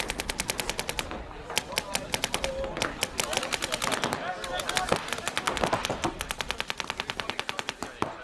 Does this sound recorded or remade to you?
recorded